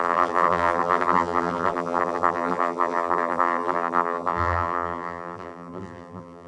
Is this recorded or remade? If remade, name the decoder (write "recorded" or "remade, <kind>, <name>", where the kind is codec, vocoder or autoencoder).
remade, vocoder, BigVGAN v2